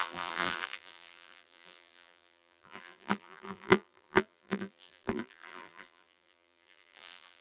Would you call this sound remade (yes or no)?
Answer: yes